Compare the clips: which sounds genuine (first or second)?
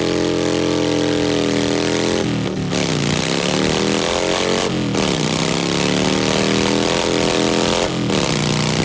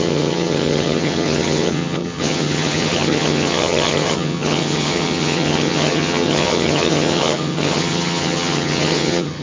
first